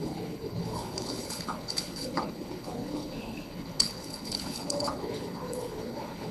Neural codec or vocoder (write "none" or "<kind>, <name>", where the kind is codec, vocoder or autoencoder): codec, HILCodec